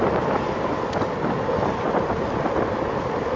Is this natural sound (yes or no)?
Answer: yes